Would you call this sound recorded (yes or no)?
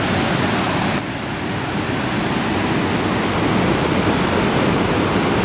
yes